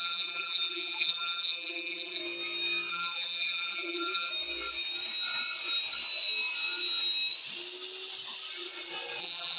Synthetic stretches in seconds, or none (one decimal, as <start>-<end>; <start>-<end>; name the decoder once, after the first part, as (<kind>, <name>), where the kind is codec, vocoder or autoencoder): 0.0-2.2 (vocoder, BigVGAN v2); 2.9-4.3; 9.2-9.6